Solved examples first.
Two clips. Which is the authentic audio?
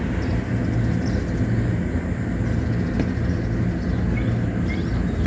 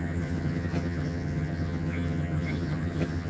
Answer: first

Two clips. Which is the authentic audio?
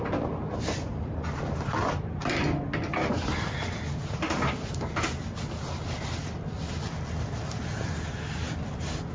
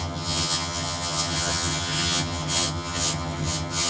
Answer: first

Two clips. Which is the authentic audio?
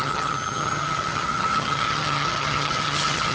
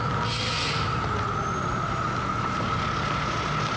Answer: second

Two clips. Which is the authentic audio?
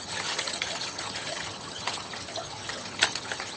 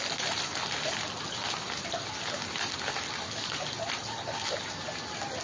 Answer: second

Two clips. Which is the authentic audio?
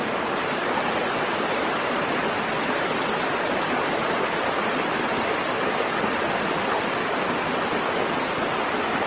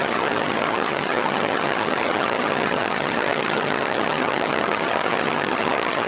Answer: first